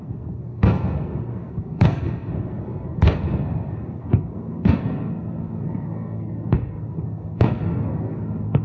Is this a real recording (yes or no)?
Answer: no